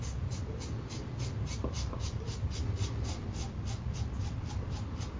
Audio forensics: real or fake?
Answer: real